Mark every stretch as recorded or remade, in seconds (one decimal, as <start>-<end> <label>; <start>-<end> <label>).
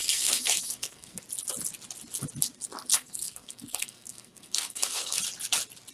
0.0-1.2 remade; 1.2-2.9 recorded; 2.9-5.2 remade; 5.2-5.9 recorded